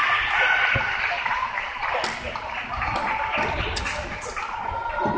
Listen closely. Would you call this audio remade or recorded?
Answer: recorded